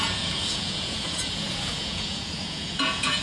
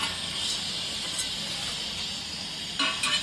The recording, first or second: second